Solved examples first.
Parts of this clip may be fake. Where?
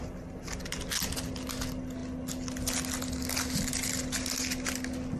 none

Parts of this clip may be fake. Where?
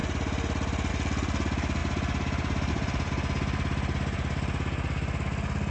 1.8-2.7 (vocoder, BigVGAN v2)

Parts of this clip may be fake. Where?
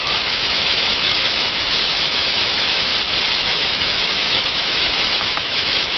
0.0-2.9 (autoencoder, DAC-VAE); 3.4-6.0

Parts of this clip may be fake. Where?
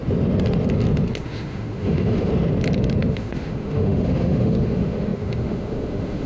1.2-2.3 (autoencoder, DAC-VAE); 3.1-6.3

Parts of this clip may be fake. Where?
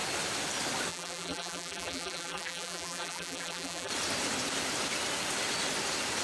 0.9-3.9 (vocoder, BigVGAN v2)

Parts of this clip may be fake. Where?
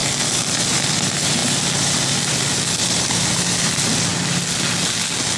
0.0-4.1 (vocoder, BigVGAN v2)